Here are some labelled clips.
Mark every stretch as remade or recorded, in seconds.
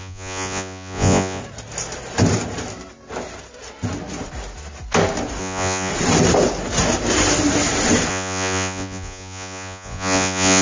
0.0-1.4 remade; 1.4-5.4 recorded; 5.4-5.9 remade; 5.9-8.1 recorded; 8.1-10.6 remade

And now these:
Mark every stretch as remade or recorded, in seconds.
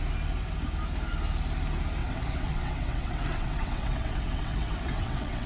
0.0-2.0 recorded; 2.0-5.5 remade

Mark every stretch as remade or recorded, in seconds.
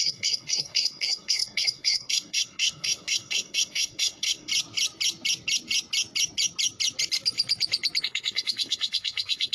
0.0-4.5 remade; 4.5-8.0 recorded; 8.0-9.5 remade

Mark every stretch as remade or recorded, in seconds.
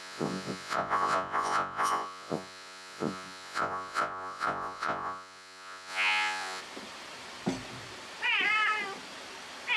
0.0-6.6 remade; 6.6-9.8 recorded